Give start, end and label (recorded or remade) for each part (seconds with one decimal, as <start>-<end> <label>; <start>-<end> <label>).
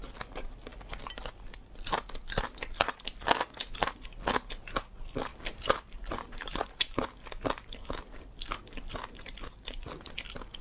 0.0-5.3 recorded; 5.3-6.8 remade; 6.8-10.6 recorded